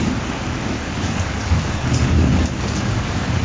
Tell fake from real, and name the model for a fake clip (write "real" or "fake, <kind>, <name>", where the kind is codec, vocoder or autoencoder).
fake, codec, DAC